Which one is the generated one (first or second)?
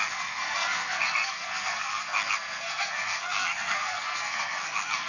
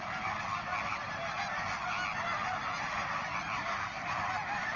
first